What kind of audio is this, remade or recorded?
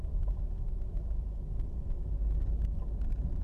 recorded